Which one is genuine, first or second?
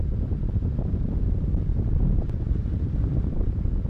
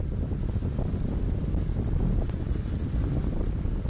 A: second